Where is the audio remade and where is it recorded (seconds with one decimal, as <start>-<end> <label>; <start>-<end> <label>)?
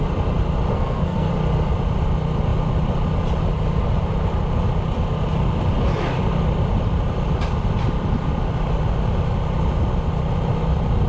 0.0-0.7 recorded; 0.7-1.3 remade; 1.3-11.1 recorded